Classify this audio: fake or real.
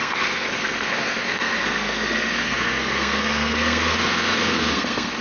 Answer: fake